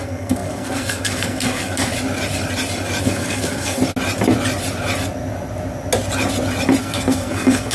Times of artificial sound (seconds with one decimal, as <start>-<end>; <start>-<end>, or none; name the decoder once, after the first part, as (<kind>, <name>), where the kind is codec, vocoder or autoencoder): 0.0-1.9 (codec, SNAC); 3.0-3.8; 6.8-7.7